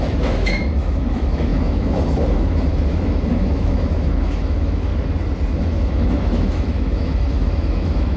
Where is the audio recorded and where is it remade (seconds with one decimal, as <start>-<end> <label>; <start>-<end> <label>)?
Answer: 0.0-4.9 remade; 4.9-5.6 recorded; 5.6-8.2 remade